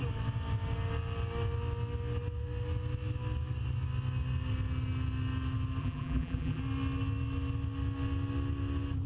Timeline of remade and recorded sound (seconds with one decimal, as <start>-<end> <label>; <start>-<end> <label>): 0.0-5.8 recorded; 5.8-6.6 remade; 6.6-9.1 recorded